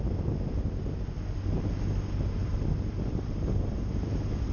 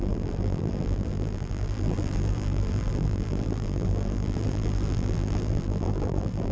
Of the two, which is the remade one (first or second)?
second